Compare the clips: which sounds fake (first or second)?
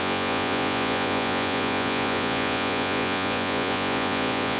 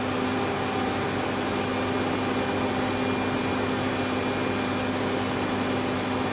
first